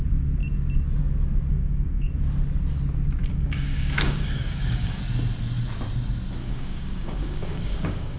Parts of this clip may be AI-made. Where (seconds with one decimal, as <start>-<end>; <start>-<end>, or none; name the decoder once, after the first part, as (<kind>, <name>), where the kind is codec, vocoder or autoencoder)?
1.5-2.1 (codec, DAC); 3.2-5.0; 6.4-8.2